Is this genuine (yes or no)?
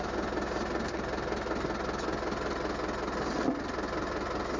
yes